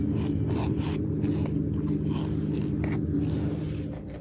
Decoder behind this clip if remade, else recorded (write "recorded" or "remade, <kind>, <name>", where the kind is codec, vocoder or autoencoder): recorded